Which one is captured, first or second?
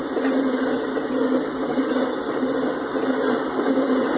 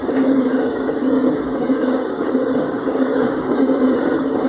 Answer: first